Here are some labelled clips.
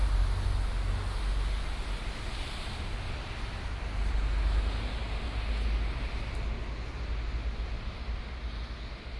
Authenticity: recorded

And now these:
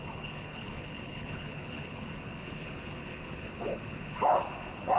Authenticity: remade